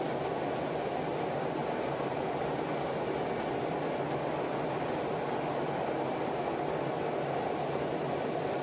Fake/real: real